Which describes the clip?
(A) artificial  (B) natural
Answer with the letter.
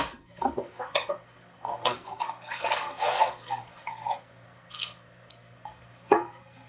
A